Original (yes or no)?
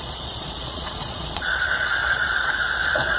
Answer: no